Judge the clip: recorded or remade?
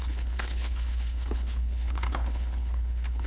remade